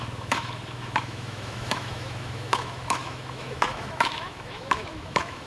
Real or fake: fake